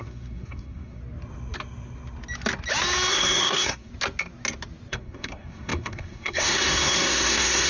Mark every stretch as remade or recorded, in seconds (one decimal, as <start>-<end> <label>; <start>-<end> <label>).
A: 0.0-1.0 remade; 1.0-3.1 recorded; 3.1-3.9 remade; 3.9-4.9 recorded; 4.9-7.7 remade